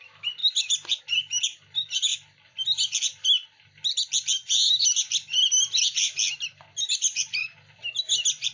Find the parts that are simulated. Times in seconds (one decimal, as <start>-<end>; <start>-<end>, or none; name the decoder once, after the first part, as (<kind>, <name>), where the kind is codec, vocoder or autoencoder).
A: none